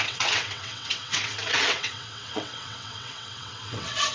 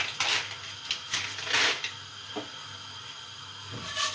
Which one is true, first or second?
second